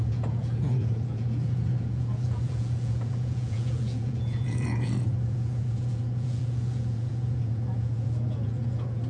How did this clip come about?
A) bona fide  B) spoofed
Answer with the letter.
B